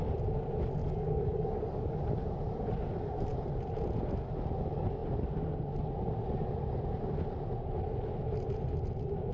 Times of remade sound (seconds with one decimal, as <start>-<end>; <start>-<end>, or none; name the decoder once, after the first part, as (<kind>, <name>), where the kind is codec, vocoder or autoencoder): 0.8-1.9 (codec, DAC)